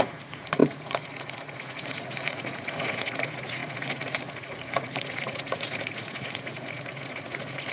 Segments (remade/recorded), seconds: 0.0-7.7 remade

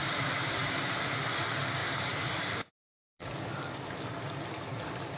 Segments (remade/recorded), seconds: 0.0-1.8 recorded; 1.8-3.3 remade; 3.3-5.2 recorded

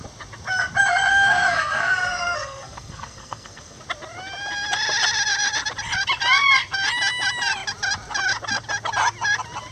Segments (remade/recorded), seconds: 0.0-1.1 recorded; 1.1-3.8 remade; 3.8-9.7 recorded

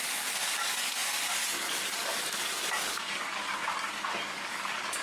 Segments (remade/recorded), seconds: 0.0-5.0 remade

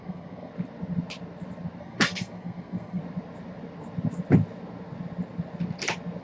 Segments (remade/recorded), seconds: 0.0-0.5 remade; 0.5-1.8 recorded; 1.8-3.0 remade; 3.0-6.2 recorded